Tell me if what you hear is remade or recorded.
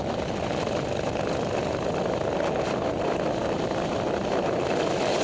recorded